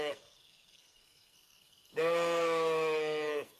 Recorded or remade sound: remade